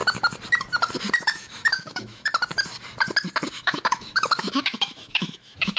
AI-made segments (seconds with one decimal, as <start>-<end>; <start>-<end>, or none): 1.2-2.3; 3.5-5.8